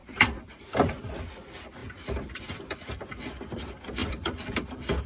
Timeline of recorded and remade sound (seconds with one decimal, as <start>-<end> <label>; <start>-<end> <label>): 0.0-0.5 remade; 0.5-1.8 recorded; 1.8-2.6 remade; 2.6-4.0 recorded; 4.0-5.1 remade